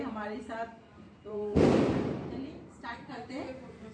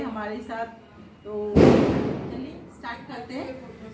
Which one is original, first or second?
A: second